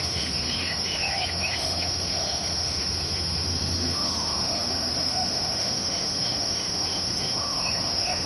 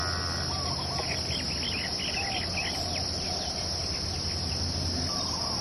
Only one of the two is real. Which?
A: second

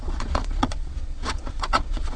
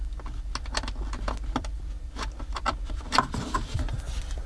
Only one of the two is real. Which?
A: second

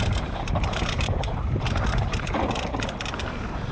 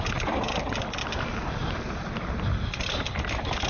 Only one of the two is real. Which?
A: second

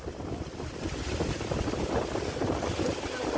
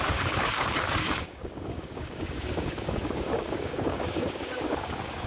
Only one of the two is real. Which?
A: first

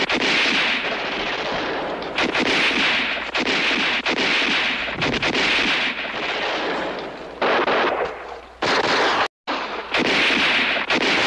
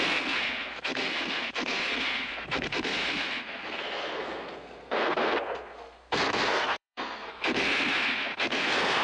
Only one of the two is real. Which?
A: first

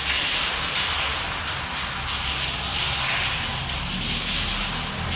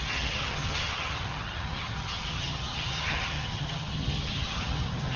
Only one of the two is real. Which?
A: first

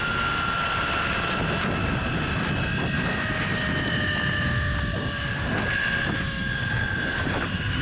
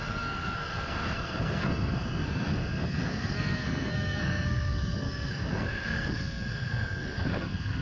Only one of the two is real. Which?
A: first